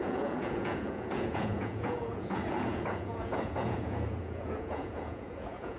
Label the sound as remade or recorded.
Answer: remade